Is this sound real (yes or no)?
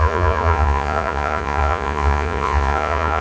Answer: no